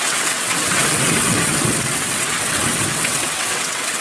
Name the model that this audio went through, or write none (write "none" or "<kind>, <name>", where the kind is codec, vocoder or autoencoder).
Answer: vocoder, WaveNeXt